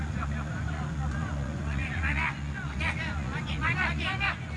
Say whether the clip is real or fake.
fake